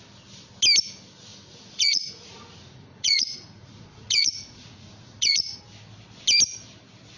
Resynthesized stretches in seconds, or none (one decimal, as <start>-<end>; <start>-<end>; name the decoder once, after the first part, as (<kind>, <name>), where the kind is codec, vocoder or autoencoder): 1.3-5.6 (vocoder, Vocos)